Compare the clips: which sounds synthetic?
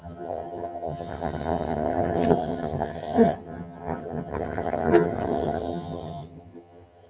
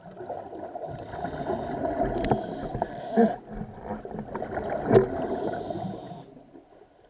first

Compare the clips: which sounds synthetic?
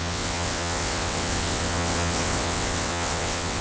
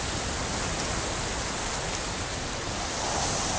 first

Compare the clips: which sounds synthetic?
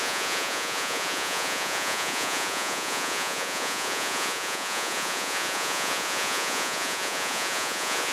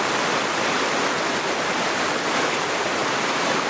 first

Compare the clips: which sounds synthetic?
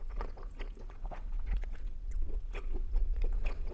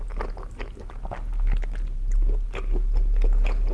first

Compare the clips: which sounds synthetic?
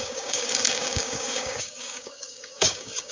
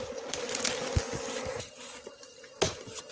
first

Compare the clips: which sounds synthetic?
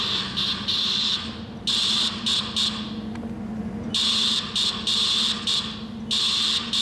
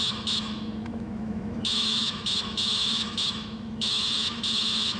second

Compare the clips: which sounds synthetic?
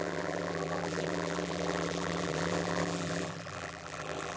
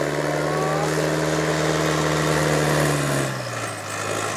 first